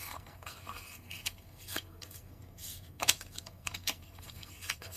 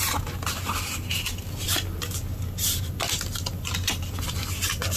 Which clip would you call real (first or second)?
second